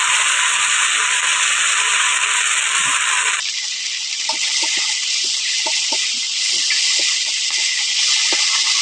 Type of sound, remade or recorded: recorded